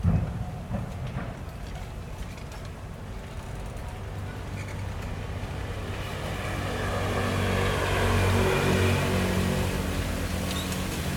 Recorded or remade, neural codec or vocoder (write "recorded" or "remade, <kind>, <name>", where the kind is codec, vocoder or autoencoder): recorded